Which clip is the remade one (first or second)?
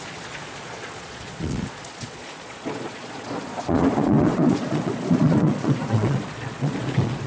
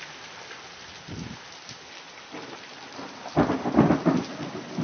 first